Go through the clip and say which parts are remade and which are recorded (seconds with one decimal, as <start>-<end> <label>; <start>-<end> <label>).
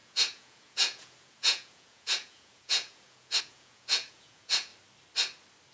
0.0-4.7 remade; 4.7-5.7 recorded